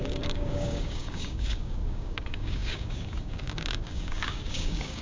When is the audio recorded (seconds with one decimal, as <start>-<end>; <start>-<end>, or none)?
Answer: none